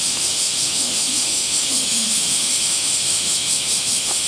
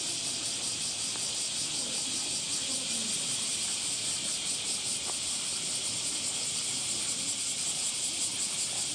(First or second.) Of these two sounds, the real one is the second